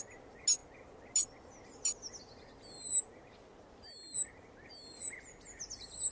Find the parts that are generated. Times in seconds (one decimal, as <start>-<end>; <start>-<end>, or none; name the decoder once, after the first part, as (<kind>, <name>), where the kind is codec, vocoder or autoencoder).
none